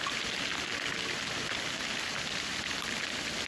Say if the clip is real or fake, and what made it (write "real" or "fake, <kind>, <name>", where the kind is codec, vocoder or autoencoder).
real